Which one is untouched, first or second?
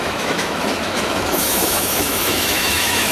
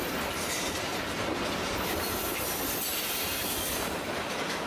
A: second